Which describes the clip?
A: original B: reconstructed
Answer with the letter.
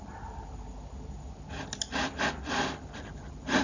A